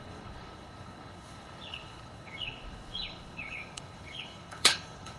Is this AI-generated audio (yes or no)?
yes